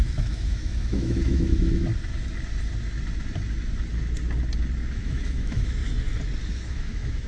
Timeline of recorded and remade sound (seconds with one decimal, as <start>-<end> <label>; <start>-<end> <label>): 0.0-1.9 remade; 1.9-4.9 recorded; 4.9-5.8 remade; 5.8-6.5 recorded; 6.5-7.3 remade